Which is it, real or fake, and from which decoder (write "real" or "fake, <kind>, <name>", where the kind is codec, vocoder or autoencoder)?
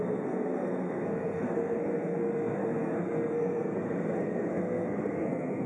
fake, codec, SNAC